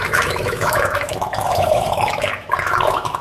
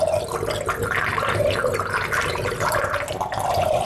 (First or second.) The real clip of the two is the second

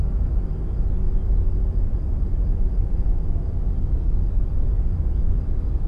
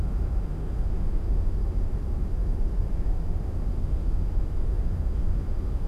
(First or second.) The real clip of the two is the first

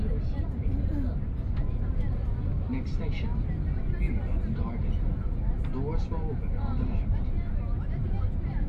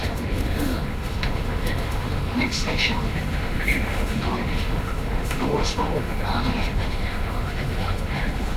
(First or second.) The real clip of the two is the first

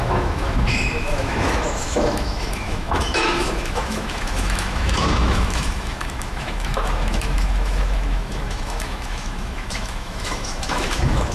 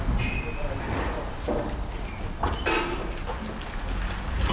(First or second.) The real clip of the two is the second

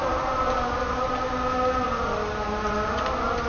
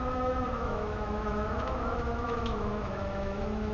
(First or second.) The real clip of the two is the first